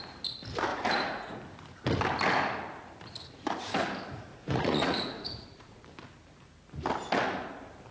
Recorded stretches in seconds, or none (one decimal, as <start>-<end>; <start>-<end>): 0.0-0.7; 1.4-4.3; 5.8-7.9